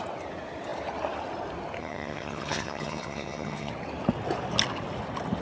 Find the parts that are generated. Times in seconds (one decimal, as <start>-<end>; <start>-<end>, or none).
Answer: 1.8-3.7